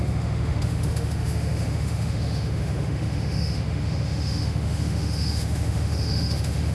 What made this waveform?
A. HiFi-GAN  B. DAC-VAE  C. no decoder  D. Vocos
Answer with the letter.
B